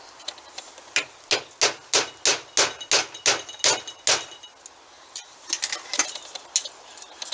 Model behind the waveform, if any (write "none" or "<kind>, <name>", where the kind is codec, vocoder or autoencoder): none